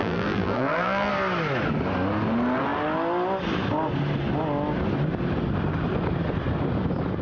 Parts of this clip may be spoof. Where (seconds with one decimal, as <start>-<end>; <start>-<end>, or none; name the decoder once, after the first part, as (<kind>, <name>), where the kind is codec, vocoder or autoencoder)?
0.0-1.1 (vocoder, BigVGAN v2)